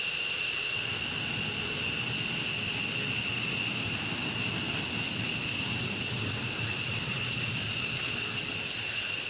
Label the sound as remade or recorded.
recorded